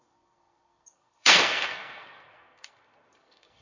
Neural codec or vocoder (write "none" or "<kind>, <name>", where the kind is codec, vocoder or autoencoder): codec, SNAC